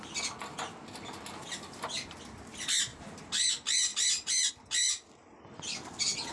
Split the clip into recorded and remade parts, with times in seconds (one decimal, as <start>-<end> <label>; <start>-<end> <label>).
0.0-2.9 recorded; 2.9-3.5 remade; 3.5-3.9 recorded; 3.9-4.5 remade; 4.5-6.3 recorded